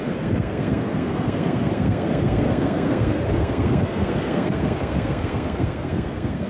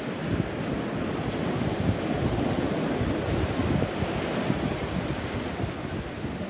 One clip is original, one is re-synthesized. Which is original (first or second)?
second